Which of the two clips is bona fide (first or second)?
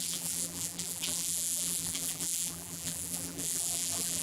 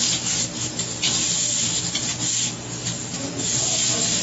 second